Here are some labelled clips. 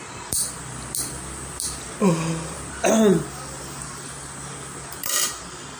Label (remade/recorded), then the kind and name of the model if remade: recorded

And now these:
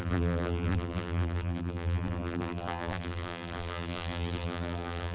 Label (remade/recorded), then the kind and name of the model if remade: remade, vocoder, BigVGAN v2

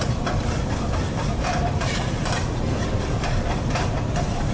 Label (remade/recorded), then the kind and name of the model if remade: remade, vocoder, BigVGAN v2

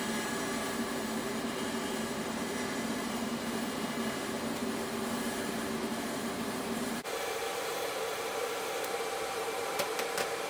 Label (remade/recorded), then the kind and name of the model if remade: remade, vocoder, BigVGAN v2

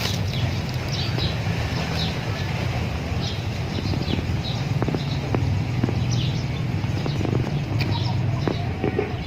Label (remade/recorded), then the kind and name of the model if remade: recorded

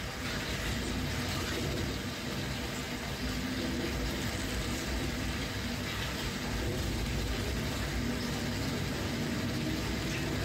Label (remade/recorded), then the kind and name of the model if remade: recorded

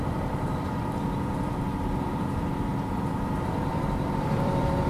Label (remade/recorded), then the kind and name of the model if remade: remade, vocoder, BigVGAN v2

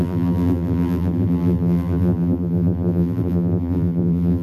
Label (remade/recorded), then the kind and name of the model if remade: remade, vocoder, BigVGAN v2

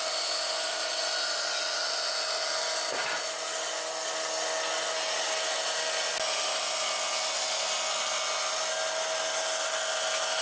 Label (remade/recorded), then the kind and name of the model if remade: recorded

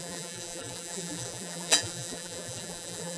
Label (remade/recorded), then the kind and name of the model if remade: remade, vocoder, BigVGAN v2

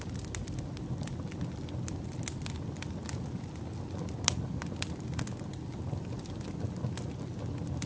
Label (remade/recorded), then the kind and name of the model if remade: recorded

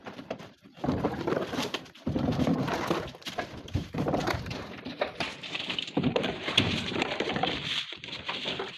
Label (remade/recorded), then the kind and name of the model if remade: remade, vocoder, BigVGAN v2